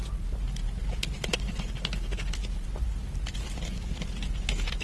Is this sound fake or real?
real